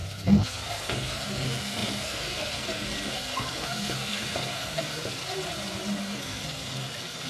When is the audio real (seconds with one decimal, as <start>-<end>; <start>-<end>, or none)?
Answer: 5.2-6.0

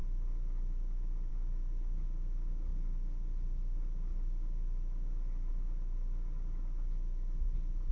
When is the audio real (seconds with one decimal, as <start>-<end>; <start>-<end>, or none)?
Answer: 0.0-7.9

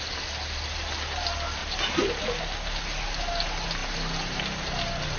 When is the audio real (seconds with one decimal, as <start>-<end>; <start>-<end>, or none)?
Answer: 0.0-5.2

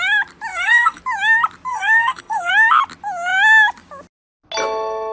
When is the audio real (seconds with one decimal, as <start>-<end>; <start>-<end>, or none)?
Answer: 0.0-0.5; 1.0-1.7; 2.5-5.1

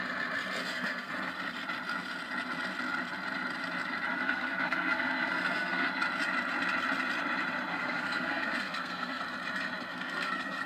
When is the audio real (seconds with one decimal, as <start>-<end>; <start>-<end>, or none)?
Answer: 0.0-0.6; 1.1-4.1; 5.9-7.7; 9.2-9.9